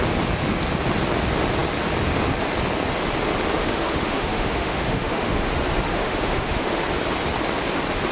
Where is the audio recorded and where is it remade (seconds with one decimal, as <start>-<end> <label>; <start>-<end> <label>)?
0.0-3.6 recorded; 3.6-5.5 remade; 5.5-5.9 recorded; 5.9-6.8 remade; 6.8-8.1 recorded